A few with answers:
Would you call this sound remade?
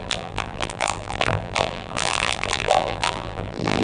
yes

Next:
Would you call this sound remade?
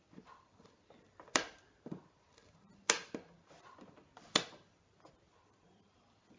yes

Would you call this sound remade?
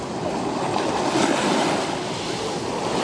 no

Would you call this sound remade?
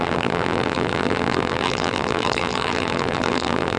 yes